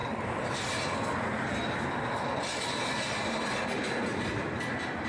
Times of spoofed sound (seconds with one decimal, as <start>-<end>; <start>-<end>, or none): none